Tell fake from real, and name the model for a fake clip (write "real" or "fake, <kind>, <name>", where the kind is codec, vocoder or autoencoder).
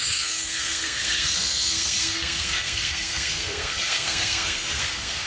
fake, codec, SNAC